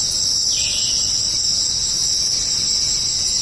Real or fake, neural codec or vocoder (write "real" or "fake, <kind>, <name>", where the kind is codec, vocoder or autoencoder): real